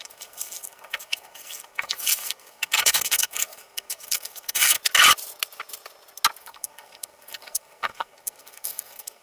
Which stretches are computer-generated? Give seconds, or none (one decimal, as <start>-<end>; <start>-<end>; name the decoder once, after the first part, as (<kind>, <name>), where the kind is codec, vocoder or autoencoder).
0.0-4.8 (codec, SNAC); 6.4-9.2